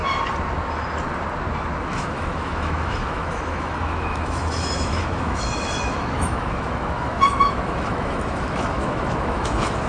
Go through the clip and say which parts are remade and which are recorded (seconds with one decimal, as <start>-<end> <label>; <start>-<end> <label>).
0.0-1.8 recorded; 1.8-9.9 remade